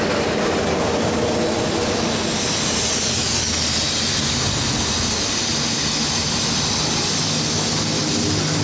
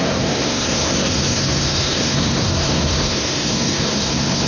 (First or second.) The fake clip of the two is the second